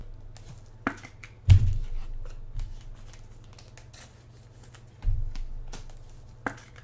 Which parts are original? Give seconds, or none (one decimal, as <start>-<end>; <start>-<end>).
0.0-6.8